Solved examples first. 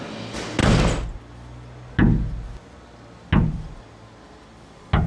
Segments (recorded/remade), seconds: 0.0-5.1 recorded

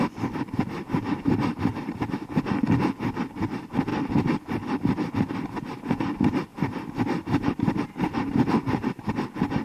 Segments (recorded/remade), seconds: 0.0-1.7 recorded; 1.7-2.4 remade; 2.4-3.9 recorded; 3.9-5.1 remade; 5.1-6.5 recorded; 6.5-9.1 remade; 9.1-9.6 recorded

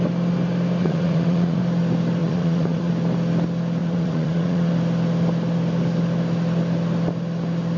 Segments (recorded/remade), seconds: 0.0-0.8 recorded; 0.8-1.6 remade; 1.6-2.2 recorded; 2.2-2.9 remade; 2.9-3.8 recorded; 3.8-4.7 remade; 4.7-7.8 recorded

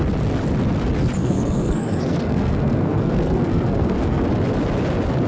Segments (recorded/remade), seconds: 0.0-1.2 recorded; 1.2-4.2 remade; 4.2-5.3 recorded